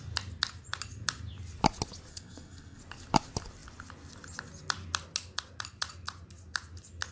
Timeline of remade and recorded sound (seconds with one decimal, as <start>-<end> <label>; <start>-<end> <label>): 0.0-2.1 recorded; 2.1-2.8 remade; 2.8-7.1 recorded

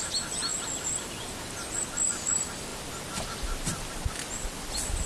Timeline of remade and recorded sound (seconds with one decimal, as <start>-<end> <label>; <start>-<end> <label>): 0.0-5.1 recorded

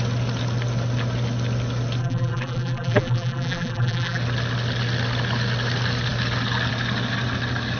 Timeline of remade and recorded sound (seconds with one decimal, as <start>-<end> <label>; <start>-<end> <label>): 0.0-2.0 recorded; 2.0-4.2 remade; 4.2-7.8 recorded

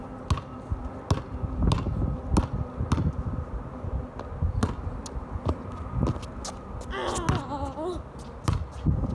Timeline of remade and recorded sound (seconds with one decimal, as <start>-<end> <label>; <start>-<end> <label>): 0.0-9.1 recorded

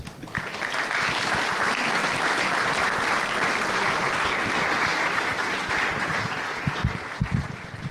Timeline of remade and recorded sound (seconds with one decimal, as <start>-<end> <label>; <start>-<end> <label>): 0.0-7.9 recorded

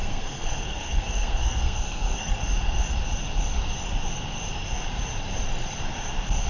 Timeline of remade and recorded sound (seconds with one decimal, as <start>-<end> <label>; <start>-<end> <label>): 0.0-2.3 remade; 2.3-6.5 recorded

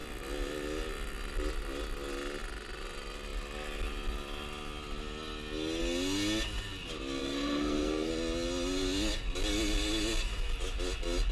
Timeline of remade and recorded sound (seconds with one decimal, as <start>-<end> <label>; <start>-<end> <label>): 0.0-7.2 recorded; 7.2-8.1 remade; 8.1-11.3 recorded

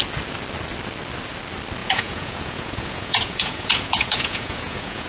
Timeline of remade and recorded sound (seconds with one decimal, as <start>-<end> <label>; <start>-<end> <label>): 0.0-1.8 recorded; 1.8-5.1 remade